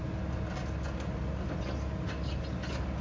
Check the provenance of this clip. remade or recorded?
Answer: recorded